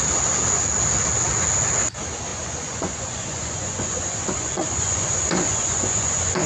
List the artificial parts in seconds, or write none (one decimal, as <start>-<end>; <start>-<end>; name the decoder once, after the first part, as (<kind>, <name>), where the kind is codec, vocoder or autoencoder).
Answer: 2.3-6.5 (vocoder, Vocos)